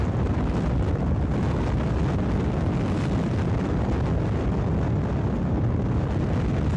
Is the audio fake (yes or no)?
no